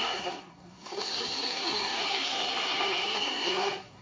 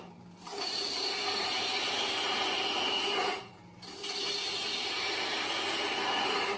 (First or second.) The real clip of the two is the second